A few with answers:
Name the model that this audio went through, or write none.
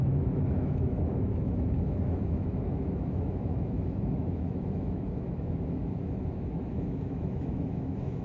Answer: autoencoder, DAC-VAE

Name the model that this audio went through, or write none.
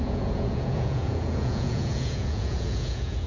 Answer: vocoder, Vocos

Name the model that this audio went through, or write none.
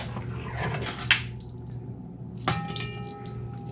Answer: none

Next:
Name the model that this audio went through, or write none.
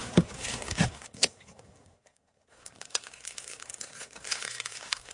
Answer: codec, SNAC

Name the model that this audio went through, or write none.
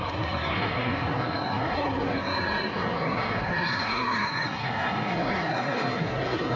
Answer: codec, SNAC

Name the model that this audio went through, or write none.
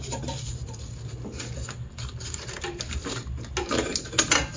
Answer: none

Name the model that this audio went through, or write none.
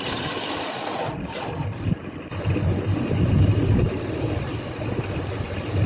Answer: none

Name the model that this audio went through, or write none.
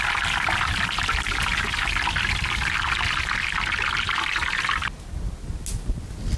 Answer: none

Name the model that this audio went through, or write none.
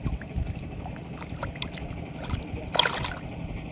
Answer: none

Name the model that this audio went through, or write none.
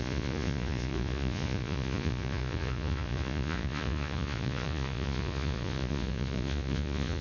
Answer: vocoder, Vocos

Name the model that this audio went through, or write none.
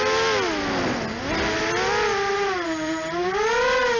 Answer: none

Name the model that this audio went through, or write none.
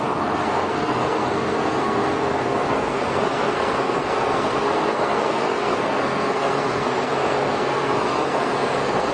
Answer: codec, SNAC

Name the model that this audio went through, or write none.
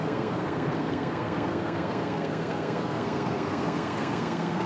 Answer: codec, SNAC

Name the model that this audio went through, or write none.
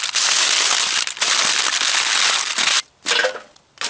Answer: none